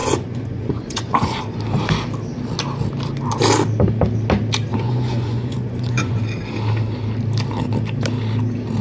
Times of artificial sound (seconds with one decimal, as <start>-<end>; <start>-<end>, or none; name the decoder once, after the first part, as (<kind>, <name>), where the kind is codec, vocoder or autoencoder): 0.0-1.4 (vocoder, Vocos); 4.7-6.2